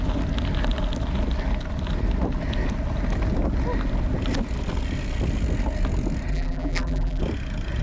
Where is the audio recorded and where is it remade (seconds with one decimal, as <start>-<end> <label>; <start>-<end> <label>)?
0.0-6.3 recorded; 6.3-7.2 remade; 7.2-7.8 recorded